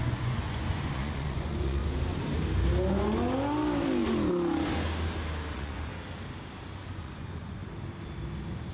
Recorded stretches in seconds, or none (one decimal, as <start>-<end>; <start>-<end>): 1.8-5.5; 5.9-6.9; 7.6-8.7